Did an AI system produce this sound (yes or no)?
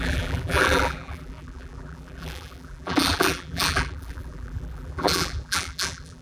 yes